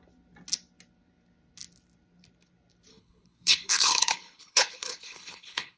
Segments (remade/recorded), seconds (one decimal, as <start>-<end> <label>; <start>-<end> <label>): 0.0-2.9 recorded; 2.9-5.8 remade